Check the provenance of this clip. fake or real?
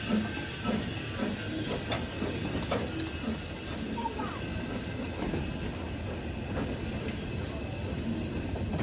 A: real